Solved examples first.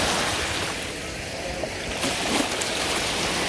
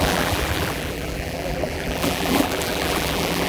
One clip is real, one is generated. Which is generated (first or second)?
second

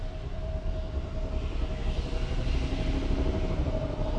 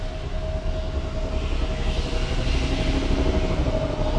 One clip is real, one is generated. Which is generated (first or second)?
first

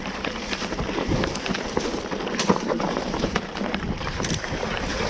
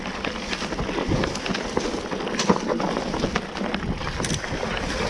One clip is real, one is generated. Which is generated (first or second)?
first